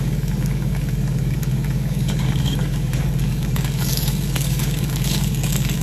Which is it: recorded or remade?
remade